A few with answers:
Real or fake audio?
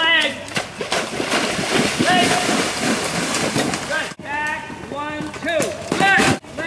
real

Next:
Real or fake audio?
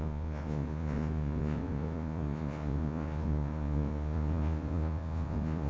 fake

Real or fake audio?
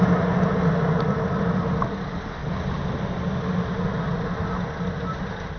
real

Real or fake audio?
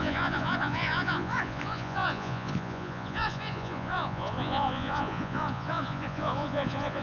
fake